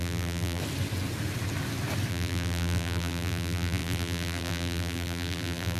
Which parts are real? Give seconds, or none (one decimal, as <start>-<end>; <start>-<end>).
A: 0.6-2.1